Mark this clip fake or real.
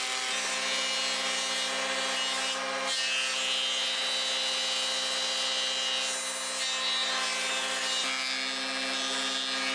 real